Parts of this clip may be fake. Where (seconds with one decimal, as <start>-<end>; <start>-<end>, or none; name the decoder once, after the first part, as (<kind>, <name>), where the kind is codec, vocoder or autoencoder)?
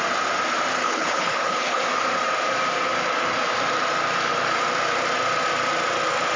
0.8-1.8 (codec, HILCodec)